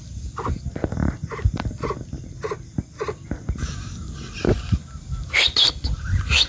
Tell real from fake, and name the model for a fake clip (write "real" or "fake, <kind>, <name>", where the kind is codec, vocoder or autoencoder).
real